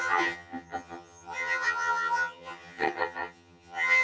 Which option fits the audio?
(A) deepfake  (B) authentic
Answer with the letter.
A